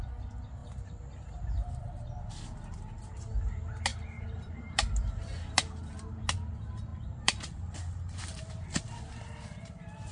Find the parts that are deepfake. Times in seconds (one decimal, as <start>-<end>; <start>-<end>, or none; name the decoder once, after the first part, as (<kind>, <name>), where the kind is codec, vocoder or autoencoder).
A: 3.9-6.2 (vocoder, BigVGAN v2); 6.9-7.4